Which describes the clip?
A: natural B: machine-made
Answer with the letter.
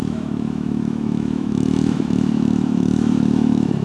B